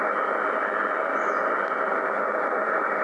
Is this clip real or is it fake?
real